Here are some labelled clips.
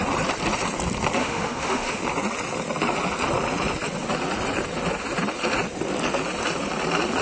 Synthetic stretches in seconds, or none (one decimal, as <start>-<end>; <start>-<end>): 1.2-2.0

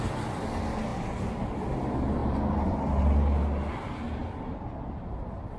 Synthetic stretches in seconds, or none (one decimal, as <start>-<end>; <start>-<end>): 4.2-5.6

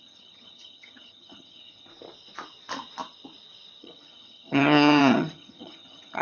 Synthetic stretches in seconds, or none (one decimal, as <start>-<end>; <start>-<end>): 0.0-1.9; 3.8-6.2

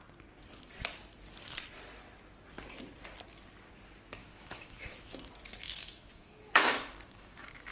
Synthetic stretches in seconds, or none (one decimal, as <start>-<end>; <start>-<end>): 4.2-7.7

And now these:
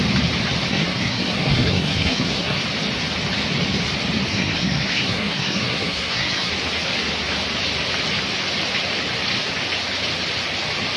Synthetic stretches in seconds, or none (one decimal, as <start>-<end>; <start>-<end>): 0.7-2.6; 4.3-6.5

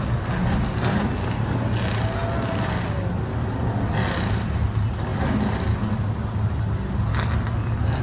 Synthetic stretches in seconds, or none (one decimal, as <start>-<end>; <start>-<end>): none

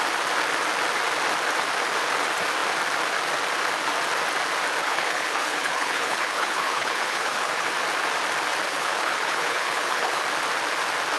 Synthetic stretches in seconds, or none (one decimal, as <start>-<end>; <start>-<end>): 4.8-7.7; 8.7-10.2

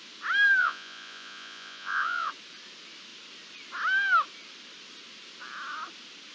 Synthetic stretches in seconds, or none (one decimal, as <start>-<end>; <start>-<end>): 0.6-2.3